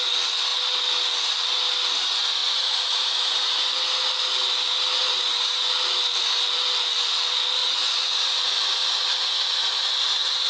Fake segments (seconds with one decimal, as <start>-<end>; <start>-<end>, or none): 2.4-3.7; 7.6-8.5